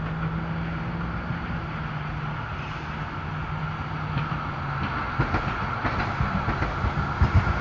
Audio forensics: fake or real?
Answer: real